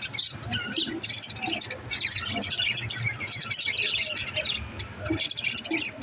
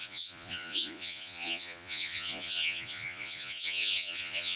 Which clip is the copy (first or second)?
second